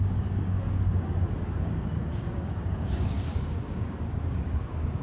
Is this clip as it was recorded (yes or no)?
no